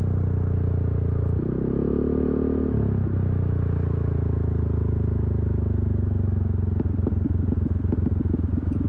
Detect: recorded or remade recorded